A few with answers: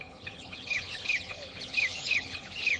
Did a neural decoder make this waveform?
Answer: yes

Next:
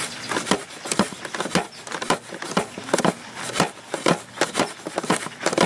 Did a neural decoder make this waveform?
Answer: no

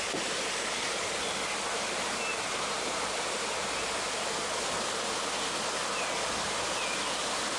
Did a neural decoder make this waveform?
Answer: no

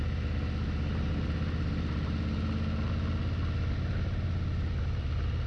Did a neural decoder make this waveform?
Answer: no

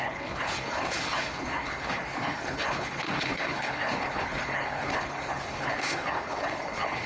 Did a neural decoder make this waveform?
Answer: yes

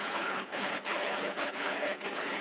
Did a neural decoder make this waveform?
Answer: yes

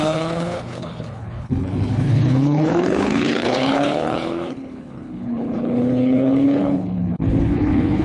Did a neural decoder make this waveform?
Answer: yes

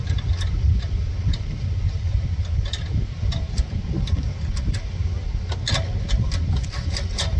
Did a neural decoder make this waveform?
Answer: no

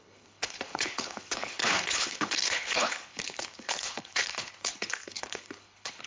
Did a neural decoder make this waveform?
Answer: yes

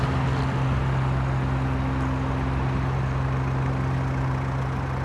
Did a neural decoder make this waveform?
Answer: no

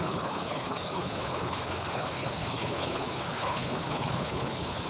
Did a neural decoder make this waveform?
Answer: yes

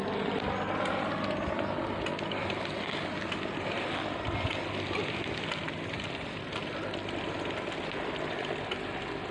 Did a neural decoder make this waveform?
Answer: no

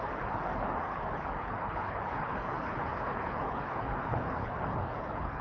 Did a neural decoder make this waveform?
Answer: yes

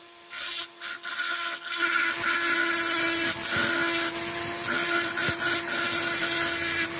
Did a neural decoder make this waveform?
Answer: no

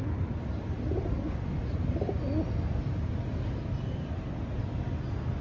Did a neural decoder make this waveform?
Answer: no